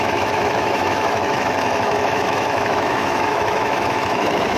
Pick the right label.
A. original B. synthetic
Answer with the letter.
B